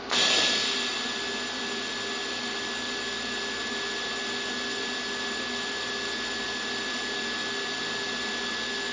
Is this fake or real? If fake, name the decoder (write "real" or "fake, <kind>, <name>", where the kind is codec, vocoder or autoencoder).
real